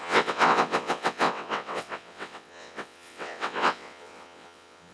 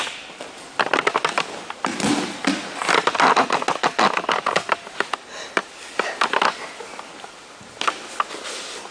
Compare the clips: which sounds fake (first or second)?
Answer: first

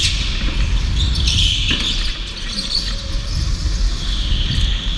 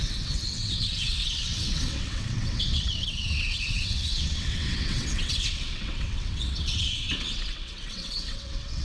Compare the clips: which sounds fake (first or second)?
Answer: second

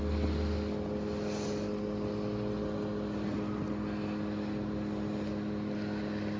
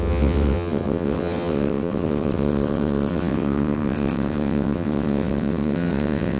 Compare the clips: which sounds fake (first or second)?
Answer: second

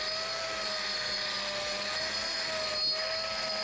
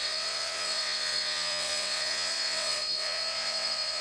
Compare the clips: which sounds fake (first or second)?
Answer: second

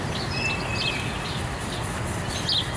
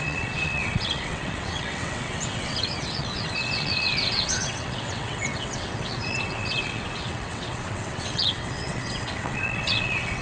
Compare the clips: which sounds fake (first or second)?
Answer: second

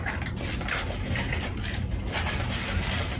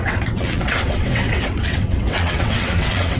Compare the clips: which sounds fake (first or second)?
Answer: second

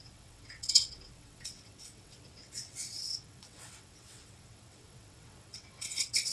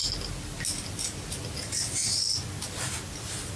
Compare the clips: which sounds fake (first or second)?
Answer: first